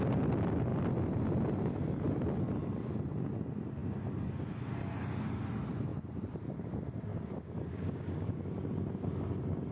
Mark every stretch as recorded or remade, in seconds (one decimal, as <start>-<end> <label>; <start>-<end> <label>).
0.0-7.1 recorded; 7.1-8.4 remade; 8.4-9.7 recorded